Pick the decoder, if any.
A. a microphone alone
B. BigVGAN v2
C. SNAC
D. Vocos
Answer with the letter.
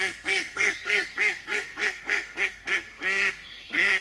C